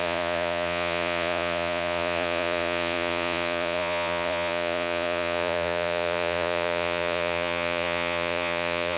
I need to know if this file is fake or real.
fake